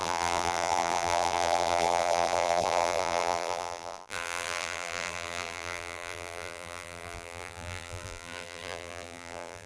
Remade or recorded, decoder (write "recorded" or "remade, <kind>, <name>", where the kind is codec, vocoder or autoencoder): remade, vocoder, BigVGAN v2